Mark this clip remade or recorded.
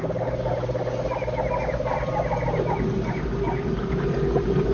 recorded